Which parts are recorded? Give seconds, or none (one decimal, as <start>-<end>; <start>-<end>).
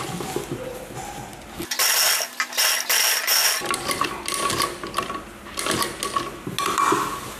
0.0-7.4